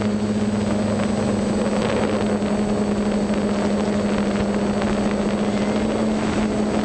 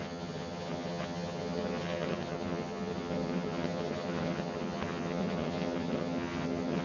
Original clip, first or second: first